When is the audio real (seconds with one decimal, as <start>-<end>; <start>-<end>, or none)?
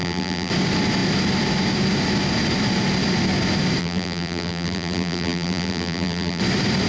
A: 0.5-3.8; 6.4-6.9